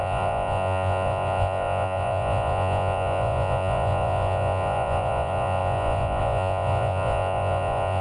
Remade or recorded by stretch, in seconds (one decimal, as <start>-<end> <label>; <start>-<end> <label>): 0.0-8.0 remade